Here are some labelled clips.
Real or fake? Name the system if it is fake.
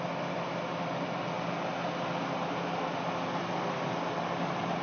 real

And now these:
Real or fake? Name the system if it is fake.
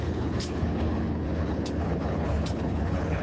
fake, codec, HILCodec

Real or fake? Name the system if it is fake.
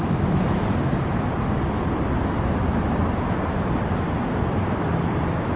real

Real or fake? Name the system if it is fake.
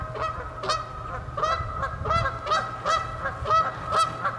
real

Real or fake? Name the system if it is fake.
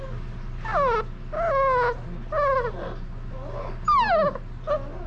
real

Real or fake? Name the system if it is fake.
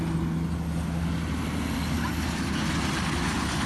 real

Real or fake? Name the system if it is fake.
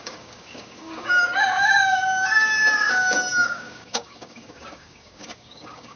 fake, codec, DAC